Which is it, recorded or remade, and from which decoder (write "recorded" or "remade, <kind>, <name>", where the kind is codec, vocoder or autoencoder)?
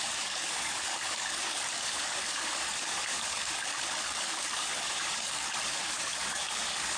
remade, codec, DAC